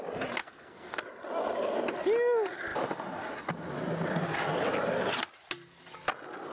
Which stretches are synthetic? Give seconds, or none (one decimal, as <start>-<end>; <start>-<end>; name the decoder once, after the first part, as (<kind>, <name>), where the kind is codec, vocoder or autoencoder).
0.4-1.0 (codec, SNAC)

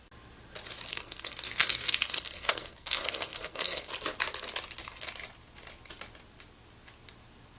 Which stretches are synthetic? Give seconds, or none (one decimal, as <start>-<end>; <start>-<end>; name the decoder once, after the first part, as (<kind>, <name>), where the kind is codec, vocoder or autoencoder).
0.9-3.9 (codec, SNAC)

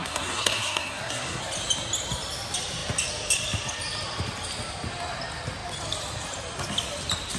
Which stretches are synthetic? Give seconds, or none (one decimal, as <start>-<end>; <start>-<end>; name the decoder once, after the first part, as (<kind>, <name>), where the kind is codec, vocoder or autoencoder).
0.0-1.4 (codec, SNAC)

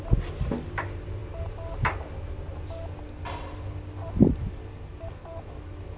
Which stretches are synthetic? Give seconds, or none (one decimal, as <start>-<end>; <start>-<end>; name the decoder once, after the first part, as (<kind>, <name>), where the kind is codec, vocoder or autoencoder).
none

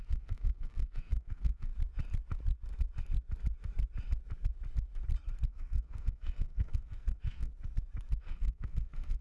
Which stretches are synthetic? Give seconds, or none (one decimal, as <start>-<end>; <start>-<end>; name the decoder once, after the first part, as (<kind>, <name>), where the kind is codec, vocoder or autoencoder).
0.0-1.7 (codec, SNAC); 5.5-7.5; 8.2-9.2

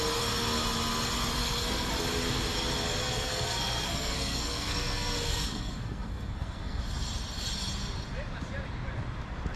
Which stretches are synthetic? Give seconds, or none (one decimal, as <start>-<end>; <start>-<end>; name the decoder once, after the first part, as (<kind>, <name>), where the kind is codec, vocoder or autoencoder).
1.4-1.9 (codec, SNAC); 3.0-6.8

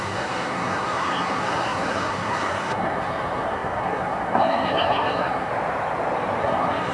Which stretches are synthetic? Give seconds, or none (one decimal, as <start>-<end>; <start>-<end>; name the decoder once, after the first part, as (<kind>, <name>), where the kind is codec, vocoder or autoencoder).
0.0-5.5 (codec, SNAC); 6.4-6.9